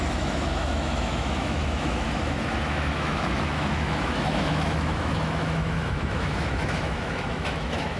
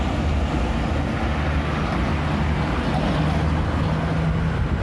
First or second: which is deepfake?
first